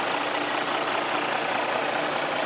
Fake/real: real